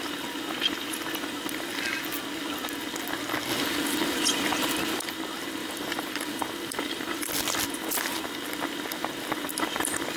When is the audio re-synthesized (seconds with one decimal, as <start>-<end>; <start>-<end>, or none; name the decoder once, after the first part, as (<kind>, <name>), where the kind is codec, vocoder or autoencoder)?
3.5-5.0 (vocoder, BigVGAN v2); 5.6-7.3